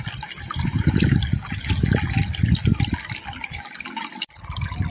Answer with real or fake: real